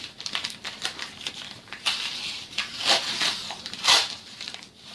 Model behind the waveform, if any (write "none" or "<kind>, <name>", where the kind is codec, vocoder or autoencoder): vocoder, BigVGAN v2